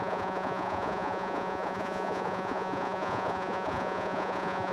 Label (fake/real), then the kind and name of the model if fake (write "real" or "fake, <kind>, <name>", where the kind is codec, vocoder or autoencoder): fake, vocoder, Vocos